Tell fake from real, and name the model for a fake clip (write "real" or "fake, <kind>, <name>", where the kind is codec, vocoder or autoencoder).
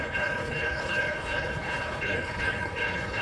fake, codec, HILCodec